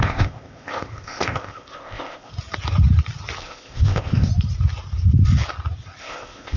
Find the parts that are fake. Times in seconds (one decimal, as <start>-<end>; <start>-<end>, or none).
0.0-2.3; 3.4-4.3; 6.0-6.6